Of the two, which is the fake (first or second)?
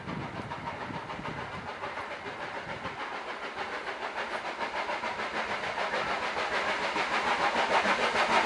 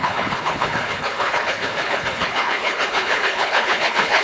second